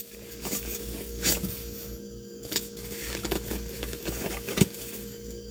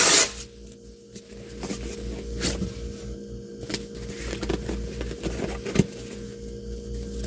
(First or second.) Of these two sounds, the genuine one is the second